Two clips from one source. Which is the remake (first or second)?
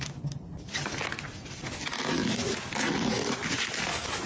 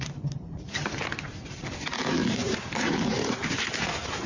second